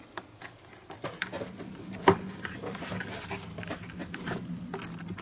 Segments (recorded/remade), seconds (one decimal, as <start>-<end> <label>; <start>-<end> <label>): 0.0-0.8 recorded; 0.8-3.0 remade; 3.0-4.0 recorded; 4.0-4.7 remade; 4.7-5.2 recorded

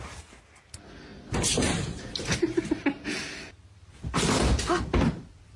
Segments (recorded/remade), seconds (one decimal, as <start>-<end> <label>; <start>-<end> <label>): 0.0-5.6 recorded